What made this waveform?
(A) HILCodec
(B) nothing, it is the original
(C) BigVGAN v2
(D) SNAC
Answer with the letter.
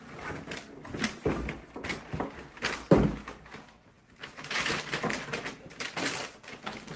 B